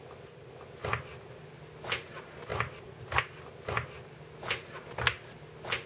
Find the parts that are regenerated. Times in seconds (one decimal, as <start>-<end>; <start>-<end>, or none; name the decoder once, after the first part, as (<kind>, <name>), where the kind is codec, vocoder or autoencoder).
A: none